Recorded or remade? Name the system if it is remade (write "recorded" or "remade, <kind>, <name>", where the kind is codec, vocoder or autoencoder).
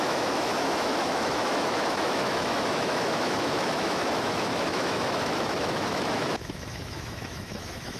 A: remade, autoencoder, DAC-VAE